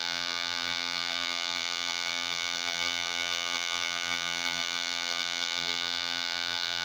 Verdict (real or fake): fake